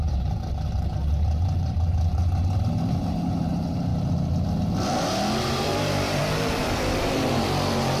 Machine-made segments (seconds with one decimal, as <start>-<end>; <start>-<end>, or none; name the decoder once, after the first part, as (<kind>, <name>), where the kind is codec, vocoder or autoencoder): 0.0-2.2 (vocoder, BigVGAN v2); 3.3-3.9; 5.5-8.0